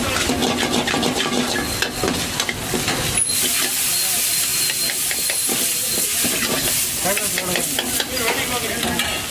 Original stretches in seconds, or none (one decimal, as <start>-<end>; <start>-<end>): 0.0-9.3